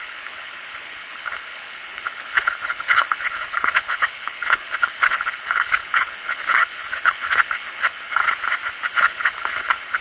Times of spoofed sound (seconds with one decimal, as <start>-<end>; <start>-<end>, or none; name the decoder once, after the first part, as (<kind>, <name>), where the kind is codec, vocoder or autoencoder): 0.0-8.2 (codec, HILCodec); 8.9-10.0